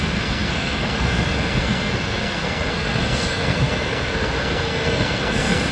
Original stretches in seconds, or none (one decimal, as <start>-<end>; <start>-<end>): none